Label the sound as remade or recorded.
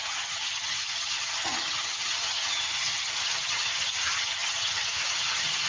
remade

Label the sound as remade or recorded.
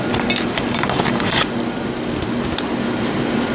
recorded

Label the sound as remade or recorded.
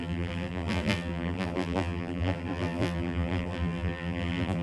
remade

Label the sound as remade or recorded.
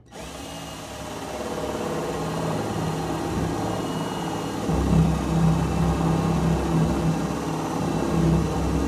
recorded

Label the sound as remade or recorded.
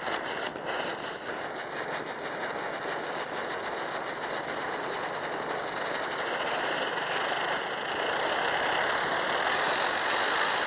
recorded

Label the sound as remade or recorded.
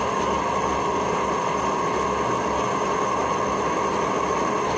recorded